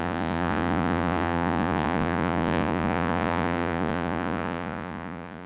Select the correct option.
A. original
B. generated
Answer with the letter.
B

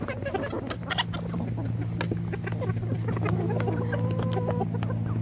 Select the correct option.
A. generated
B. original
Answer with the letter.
B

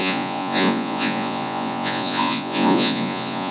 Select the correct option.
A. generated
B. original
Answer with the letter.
A